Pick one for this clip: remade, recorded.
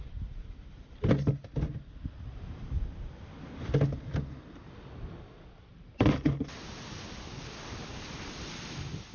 recorded